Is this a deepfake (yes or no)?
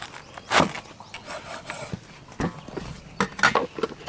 no